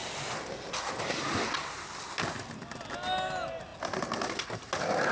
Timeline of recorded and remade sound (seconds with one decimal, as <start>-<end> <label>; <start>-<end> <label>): 0.0-5.1 recorded